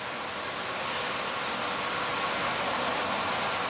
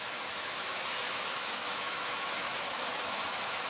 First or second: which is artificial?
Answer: second